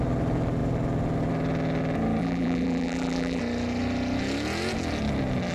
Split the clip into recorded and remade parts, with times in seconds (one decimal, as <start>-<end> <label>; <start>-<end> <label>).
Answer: 0.0-2.2 recorded; 2.2-3.4 remade; 3.4-5.5 recorded

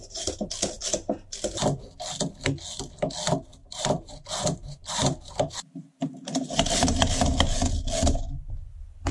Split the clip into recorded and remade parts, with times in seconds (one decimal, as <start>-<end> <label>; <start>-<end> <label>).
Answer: 0.0-0.5 remade; 0.5-3.6 recorded; 3.6-7.1 remade; 7.1-9.1 recorded